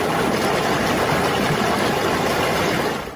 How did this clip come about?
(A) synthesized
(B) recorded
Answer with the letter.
A